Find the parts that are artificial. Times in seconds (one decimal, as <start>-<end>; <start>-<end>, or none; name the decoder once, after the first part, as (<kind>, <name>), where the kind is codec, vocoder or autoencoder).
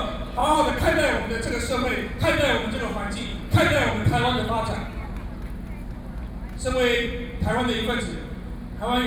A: 0.4-1.3 (vocoder, BigVGAN v2); 3.3-8.0